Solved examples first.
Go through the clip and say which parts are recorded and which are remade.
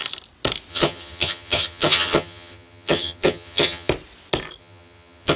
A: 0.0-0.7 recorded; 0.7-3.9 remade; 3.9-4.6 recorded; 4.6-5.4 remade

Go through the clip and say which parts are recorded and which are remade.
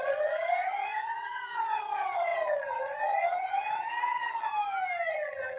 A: 0.0-4.5 remade; 4.5-5.1 recorded; 5.1-5.6 remade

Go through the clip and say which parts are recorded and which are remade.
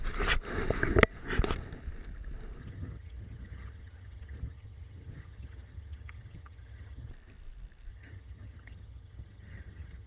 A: 0.0-2.6 recorded; 2.6-7.1 remade; 7.1-7.9 recorded; 7.9-10.1 remade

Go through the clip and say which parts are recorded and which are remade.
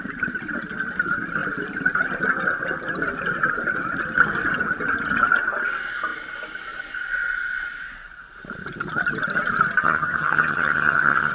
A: 0.0-9.8 recorded; 9.8-11.3 remade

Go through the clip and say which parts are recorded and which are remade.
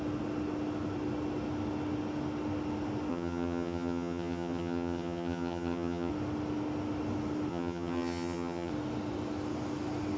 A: 0.0-3.1 recorded; 3.1-6.1 remade; 6.1-7.5 recorded; 7.5-8.7 remade; 8.7-10.2 recorded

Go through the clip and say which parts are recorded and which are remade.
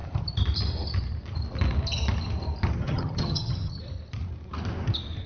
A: 0.0-2.8 recorded; 2.8-3.8 remade; 3.8-5.3 recorded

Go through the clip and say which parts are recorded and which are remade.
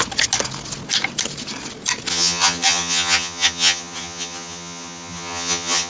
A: 0.0-2.1 recorded; 2.1-5.9 remade